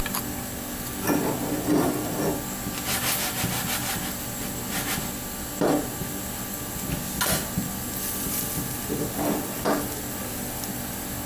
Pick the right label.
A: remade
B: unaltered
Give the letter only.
B